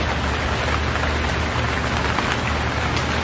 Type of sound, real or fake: real